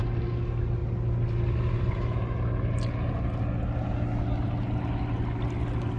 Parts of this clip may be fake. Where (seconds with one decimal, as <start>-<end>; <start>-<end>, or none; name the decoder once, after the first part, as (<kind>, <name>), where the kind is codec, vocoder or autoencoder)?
none